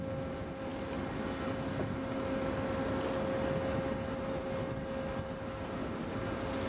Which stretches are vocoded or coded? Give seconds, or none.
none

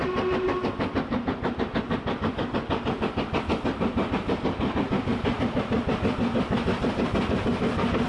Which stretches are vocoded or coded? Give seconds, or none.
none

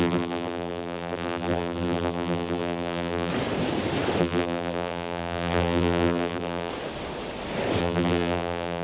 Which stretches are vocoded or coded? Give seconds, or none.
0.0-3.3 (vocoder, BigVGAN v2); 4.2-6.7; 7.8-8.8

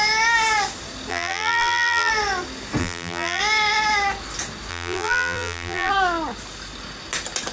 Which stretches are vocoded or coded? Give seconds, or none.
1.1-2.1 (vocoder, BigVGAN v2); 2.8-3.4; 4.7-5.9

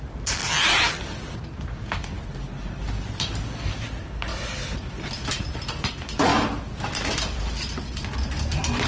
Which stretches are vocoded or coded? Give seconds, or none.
0.4-0.9 (vocoder, BigVGAN v2); 4.3-5.1; 6.3-7.4

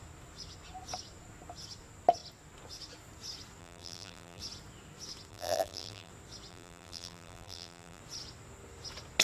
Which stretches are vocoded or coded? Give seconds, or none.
3.6-4.4 (vocoder, BigVGAN v2); 5.3-6.1; 6.5-8.0